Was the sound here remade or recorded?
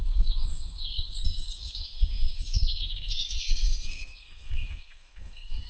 remade